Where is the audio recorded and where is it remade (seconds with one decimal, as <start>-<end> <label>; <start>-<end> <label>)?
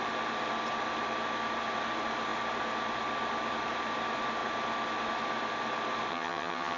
0.0-6.1 recorded; 6.1-6.8 remade